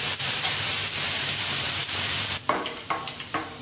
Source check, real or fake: fake